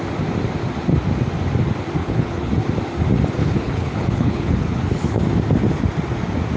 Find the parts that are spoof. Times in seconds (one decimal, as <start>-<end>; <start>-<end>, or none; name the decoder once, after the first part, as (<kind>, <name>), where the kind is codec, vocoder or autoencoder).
2.0-2.5 (codec, HILCodec); 3.4-5.2